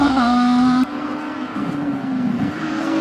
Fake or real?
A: fake